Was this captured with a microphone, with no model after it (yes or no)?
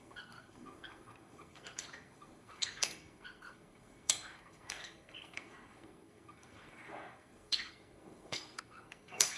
no